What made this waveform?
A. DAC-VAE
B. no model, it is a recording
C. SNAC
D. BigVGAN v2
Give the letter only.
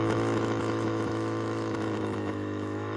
A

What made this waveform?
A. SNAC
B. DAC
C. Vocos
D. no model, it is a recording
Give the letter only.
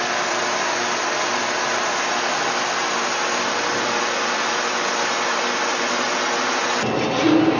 D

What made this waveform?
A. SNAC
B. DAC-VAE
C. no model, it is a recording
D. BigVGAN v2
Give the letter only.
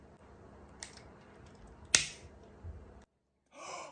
C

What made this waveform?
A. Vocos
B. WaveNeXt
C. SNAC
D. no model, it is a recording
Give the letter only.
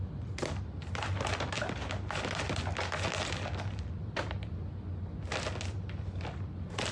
D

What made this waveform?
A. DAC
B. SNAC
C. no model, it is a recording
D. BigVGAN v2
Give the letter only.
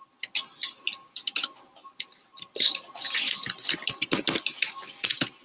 C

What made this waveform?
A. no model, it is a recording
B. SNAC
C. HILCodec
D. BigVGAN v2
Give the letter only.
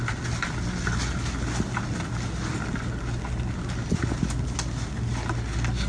A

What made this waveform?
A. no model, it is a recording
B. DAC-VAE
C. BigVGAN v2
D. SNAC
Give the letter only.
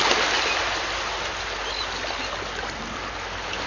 A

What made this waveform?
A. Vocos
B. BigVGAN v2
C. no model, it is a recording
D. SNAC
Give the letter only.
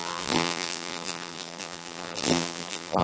B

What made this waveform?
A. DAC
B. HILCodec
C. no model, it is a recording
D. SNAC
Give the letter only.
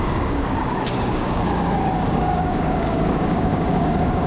A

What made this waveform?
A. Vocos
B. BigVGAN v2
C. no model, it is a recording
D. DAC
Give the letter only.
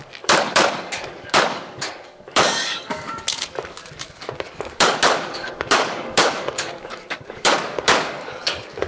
D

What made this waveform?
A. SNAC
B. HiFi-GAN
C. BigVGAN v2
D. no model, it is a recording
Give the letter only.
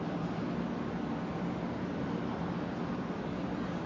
D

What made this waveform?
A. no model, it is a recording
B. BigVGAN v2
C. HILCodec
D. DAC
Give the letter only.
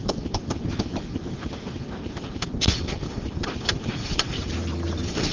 B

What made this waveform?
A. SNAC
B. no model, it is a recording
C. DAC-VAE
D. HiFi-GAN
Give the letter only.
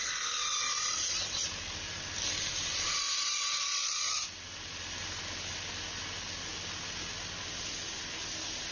B